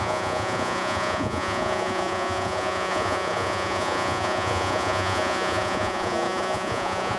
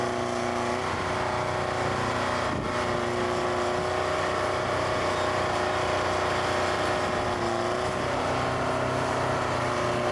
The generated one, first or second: first